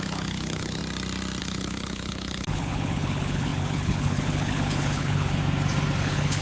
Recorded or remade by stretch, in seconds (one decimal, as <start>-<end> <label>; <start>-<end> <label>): 0.0-0.8 remade; 0.8-1.4 recorded; 1.4-5.4 remade; 5.4-6.0 recorded; 6.0-6.4 remade